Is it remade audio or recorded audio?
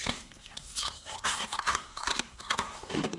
remade